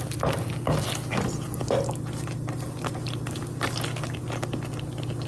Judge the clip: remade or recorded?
recorded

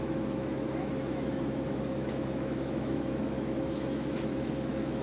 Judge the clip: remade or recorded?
remade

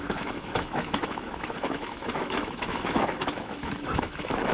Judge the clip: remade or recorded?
remade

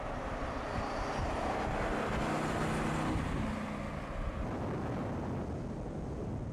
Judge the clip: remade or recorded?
recorded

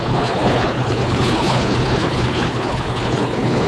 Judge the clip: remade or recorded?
remade